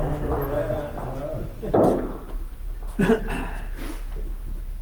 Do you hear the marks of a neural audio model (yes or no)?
no